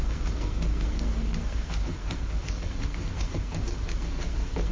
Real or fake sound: fake